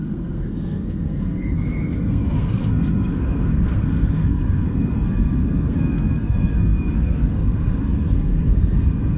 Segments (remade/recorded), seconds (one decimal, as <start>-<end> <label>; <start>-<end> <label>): 0.0-9.2 remade